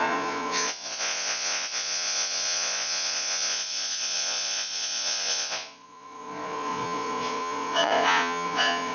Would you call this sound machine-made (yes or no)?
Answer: yes